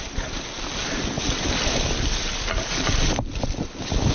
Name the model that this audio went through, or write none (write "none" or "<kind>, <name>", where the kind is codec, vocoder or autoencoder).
none